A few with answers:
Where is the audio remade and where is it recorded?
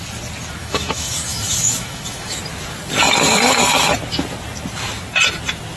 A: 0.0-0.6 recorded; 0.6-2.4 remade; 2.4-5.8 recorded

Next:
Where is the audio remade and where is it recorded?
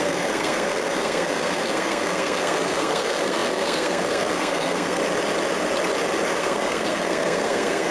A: 0.0-5.0 remade; 5.0-6.4 recorded; 6.4-7.9 remade